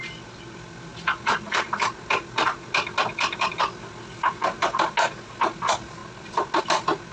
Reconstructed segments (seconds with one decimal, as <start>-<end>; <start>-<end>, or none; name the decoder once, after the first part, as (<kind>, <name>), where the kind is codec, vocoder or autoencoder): none